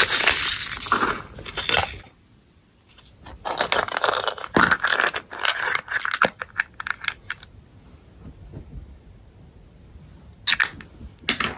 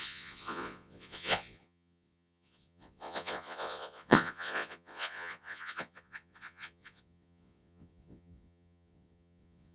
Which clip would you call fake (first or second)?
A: second